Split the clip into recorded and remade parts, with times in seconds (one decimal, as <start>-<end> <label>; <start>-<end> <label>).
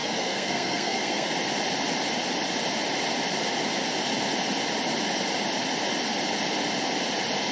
0.0-1.3 remade; 1.3-7.5 recorded